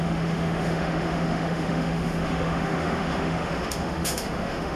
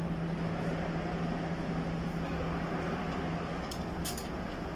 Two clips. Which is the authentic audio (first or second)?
second